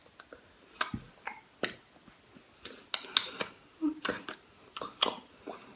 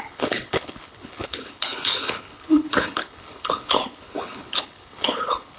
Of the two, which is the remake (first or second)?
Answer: second